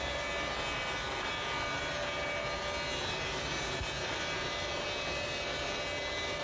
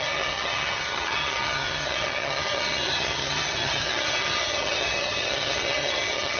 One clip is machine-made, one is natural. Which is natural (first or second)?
first